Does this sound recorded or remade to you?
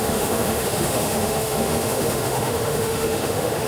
remade